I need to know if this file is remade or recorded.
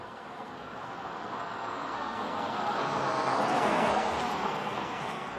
remade